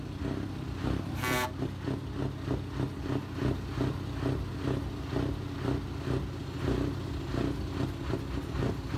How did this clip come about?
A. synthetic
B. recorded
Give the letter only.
B